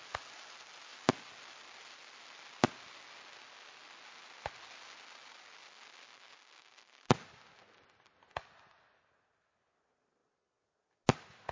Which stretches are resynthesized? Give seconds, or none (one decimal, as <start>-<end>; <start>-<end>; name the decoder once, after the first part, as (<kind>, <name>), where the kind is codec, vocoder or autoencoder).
none